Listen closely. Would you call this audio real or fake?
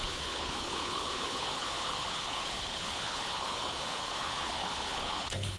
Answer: fake